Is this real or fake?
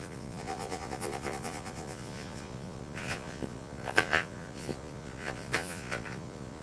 fake